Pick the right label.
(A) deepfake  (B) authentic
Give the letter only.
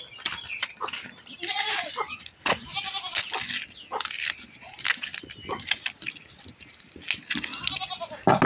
B